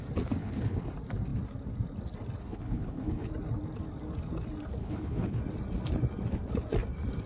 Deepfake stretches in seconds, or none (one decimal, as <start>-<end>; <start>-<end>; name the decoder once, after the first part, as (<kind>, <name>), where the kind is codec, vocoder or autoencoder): 0.4-0.9 (codec, HILCodec); 2.4-3.3; 4.8-5.4